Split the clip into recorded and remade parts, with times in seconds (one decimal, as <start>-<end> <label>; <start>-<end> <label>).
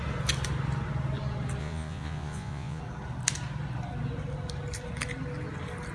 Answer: 0.0-1.6 recorded; 1.6-2.8 remade; 2.8-5.9 recorded